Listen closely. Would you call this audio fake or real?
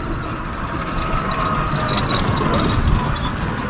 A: real